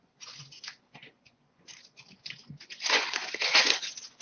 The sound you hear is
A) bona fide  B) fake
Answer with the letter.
B